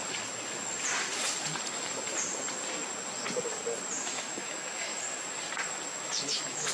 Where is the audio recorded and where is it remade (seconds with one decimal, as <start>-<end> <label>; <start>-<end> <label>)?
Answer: 0.0-4.0 recorded; 4.0-4.9 remade; 4.9-5.9 recorded; 5.9-6.7 remade